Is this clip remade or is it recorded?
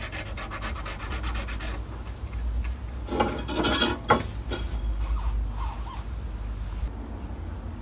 recorded